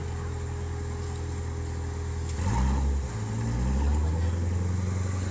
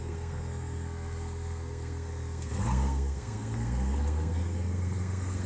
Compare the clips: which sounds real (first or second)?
first